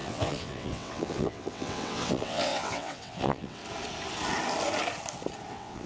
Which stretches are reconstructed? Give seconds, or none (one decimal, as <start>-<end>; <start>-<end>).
0.0-3.6; 5.5-5.9